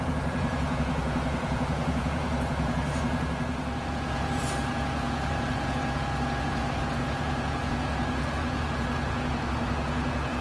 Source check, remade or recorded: remade